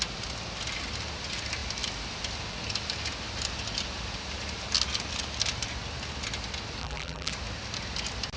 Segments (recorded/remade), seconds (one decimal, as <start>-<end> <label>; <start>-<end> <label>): 0.0-6.8 recorded; 6.8-7.3 remade; 7.3-8.4 recorded